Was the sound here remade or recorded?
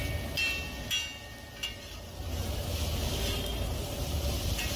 recorded